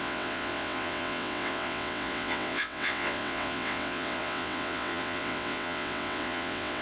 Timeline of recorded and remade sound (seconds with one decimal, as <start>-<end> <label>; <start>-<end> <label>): 0.0-6.8 remade